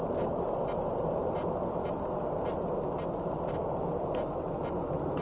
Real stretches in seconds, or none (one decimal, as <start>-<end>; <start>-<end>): 0.0-5.2